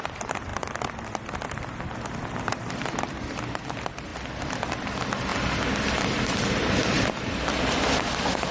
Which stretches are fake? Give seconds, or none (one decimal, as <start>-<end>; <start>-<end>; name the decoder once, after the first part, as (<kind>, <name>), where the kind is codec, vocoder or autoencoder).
none